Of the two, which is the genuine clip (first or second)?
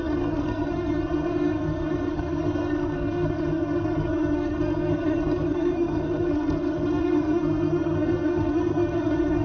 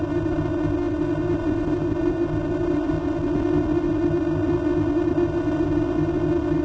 second